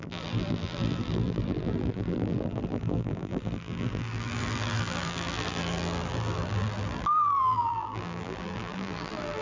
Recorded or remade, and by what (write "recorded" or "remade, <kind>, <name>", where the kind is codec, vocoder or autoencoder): remade, vocoder, BigVGAN v2